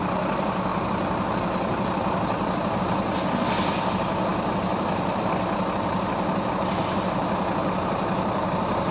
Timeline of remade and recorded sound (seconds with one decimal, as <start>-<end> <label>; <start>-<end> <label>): 0.0-8.9 recorded